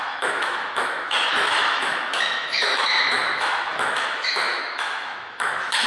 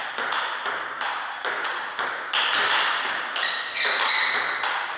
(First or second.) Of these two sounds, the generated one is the first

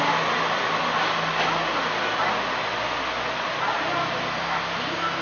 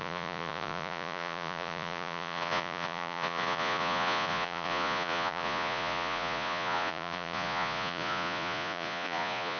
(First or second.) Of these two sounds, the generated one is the second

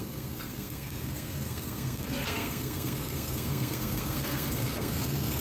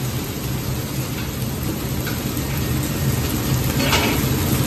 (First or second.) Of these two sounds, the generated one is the first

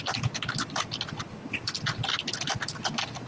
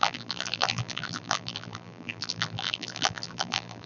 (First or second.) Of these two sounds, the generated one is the second